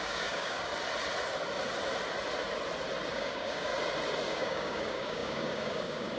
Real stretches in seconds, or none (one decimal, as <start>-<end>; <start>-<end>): 0.7-3.1; 3.7-4.3